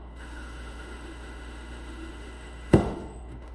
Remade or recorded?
remade